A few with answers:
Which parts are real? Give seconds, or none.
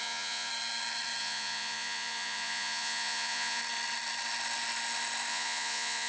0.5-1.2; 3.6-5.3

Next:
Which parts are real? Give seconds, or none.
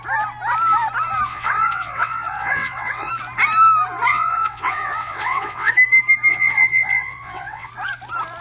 0.0-1.3; 3.1-4.1; 5.7-6.3; 7.7-8.4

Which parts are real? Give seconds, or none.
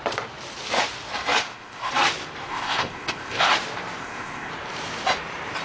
0.0-1.4; 1.9-2.5; 3.5-4.0; 4.5-5.6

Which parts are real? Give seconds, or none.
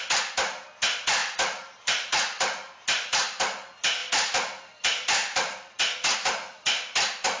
0.0-1.2; 3.4-4.0; 5.8-7.4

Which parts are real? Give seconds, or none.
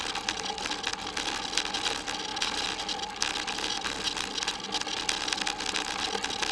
0.0-6.5